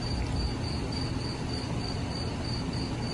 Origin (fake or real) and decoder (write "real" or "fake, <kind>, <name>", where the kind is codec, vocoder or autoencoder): real